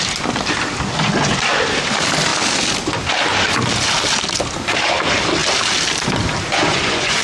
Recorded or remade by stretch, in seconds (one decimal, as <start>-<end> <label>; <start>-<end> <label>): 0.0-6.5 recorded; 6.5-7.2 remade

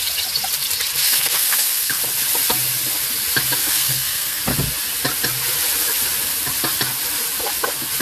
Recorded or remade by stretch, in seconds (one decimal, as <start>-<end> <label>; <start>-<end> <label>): 0.0-1.0 recorded; 1.0-2.0 remade; 2.0-3.6 recorded; 3.6-4.4 remade; 4.4-8.0 recorded

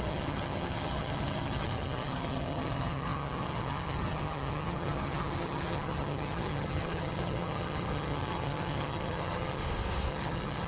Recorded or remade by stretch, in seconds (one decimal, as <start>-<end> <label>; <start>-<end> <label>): 0.0-9.6 remade; 9.6-10.1 recorded; 10.1-10.7 remade

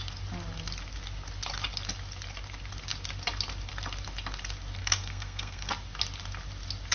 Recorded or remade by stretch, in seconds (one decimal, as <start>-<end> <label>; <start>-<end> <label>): 0.0-4.8 recorded; 4.8-5.7 remade; 5.7-6.9 recorded

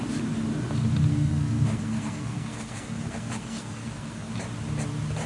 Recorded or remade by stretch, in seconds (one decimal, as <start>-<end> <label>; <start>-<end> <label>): 0.0-1.1 recorded; 1.1-4.3 remade; 4.3-5.3 recorded